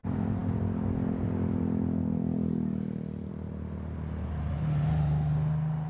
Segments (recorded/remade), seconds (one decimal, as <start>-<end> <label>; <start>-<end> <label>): 0.0-5.9 recorded